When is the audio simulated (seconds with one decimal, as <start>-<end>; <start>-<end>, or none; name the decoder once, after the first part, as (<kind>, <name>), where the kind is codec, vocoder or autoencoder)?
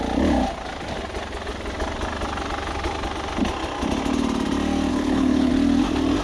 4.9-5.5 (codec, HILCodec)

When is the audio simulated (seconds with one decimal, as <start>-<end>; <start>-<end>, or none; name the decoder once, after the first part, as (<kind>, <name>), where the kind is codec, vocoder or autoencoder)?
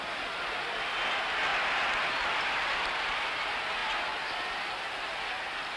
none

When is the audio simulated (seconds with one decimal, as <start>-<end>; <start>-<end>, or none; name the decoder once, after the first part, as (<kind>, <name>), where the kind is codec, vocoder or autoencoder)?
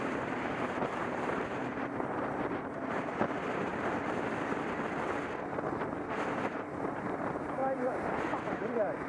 0.0-3.7 (vocoder, BigVGAN v2); 6.1-9.1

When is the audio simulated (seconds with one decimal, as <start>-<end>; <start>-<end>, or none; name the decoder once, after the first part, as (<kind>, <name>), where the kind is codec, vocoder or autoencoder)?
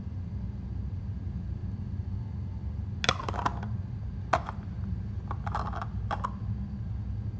none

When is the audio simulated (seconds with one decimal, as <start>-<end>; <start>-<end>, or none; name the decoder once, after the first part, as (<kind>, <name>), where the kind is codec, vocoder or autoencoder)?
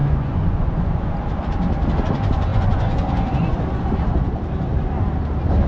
0.0-1.2 (vocoder, Vocos); 2.5-3.6